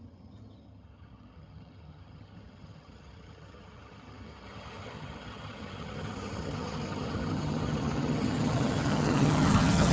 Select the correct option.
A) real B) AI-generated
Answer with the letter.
B